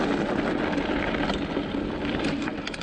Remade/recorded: recorded